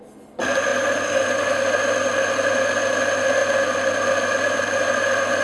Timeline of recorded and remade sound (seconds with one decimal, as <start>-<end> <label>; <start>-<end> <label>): 0.0-5.4 recorded